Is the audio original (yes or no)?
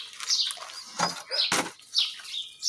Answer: yes